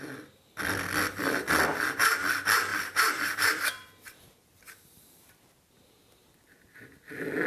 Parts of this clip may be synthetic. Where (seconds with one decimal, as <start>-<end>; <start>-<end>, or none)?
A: 2.7-5.6